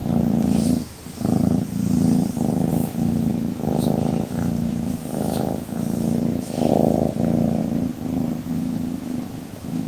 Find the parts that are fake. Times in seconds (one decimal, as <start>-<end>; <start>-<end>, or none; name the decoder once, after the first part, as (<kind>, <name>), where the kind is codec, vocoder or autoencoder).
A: 2.7-7.6 (autoencoder, DAC-VAE); 8.5-9.9